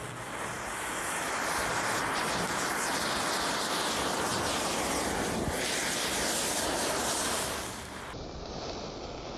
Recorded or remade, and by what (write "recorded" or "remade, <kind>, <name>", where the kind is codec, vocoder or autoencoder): recorded